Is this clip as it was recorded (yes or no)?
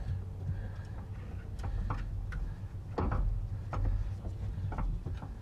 yes